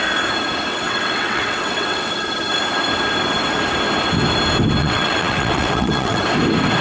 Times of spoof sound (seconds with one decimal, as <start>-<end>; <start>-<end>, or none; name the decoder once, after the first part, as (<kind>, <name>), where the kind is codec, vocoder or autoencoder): 0.7-2.3 (vocoder, WaveNeXt); 4.8-6.2